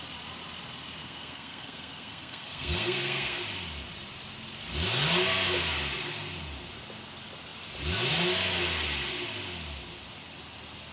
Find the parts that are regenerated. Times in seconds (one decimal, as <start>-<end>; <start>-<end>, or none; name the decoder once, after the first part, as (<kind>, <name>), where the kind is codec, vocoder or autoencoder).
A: 1.0-3.4 (codec, SNAC)